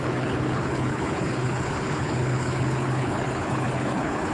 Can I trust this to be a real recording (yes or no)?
no